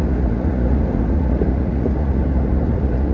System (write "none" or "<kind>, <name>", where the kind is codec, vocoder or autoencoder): vocoder, Vocos